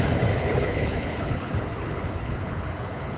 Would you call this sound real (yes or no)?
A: no